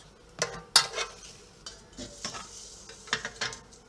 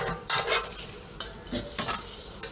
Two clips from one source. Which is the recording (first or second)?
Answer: first